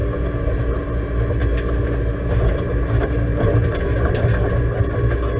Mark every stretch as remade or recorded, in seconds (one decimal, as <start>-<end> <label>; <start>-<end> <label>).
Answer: 0.0-3.0 recorded; 3.0-4.2 remade; 4.2-5.4 recorded